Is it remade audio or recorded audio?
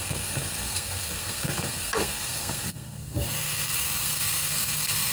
remade